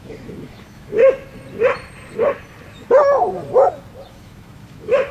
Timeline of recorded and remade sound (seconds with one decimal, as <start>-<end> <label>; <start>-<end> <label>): 0.0-1.0 remade; 1.0-4.1 recorded; 4.1-5.1 remade